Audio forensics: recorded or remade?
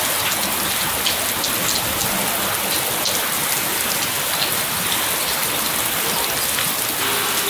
recorded